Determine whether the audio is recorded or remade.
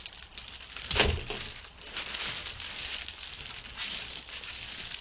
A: recorded